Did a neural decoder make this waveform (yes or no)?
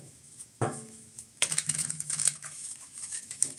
yes